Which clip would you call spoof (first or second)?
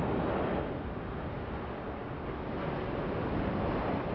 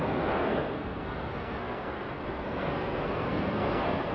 second